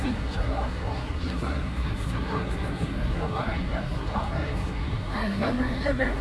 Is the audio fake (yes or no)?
yes